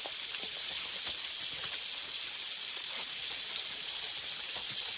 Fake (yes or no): no